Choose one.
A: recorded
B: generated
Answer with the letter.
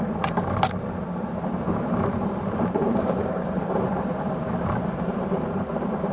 B